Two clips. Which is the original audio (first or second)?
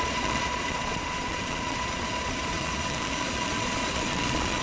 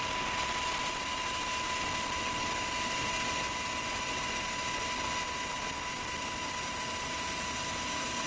second